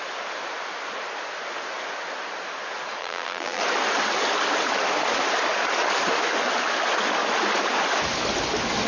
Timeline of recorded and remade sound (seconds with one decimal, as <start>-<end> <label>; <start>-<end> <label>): 0.0-3.0 recorded; 3.0-3.6 remade; 3.6-8.9 recorded